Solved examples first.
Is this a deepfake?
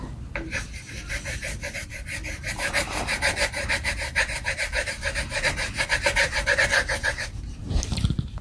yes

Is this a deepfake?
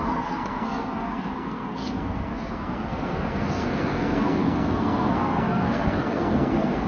yes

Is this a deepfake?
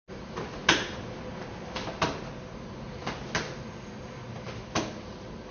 no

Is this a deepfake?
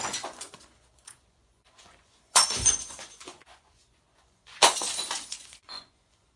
yes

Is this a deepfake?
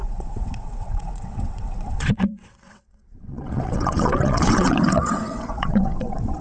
yes